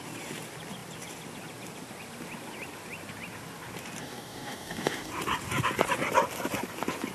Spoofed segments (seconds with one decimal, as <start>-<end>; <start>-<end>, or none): 4.0-5.1